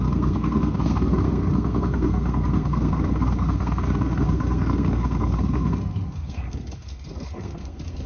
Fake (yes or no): yes